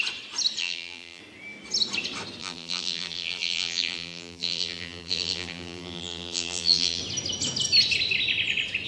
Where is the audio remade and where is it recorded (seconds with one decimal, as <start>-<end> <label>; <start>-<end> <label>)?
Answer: 0.0-0.6 recorded; 0.6-1.2 remade; 1.2-2.4 recorded; 2.4-7.0 remade; 7.0-8.9 recorded